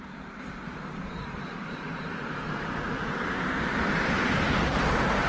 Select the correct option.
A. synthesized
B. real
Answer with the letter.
A